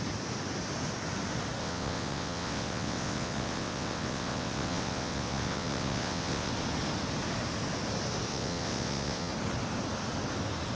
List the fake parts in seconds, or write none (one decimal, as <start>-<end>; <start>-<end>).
1.6-6.5; 8.3-9.3